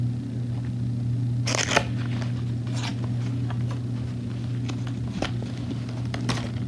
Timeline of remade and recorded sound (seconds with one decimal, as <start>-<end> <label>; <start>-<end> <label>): 0.0-6.7 recorded